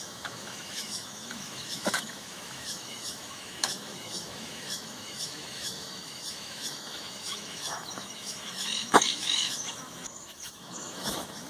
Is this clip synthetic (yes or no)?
yes